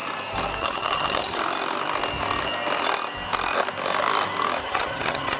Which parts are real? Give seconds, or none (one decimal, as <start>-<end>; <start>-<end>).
0.0-0.6; 1.4-4.6